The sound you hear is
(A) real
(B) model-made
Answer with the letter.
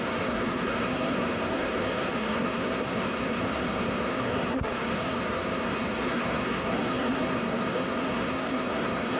B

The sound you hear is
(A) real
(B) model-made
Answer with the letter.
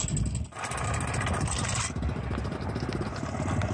A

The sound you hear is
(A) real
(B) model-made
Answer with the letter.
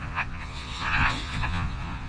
B